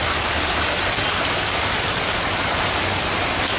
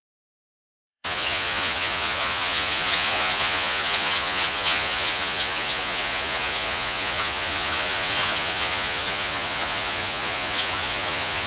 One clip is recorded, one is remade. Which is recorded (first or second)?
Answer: first